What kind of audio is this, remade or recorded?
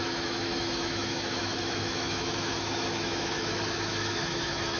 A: remade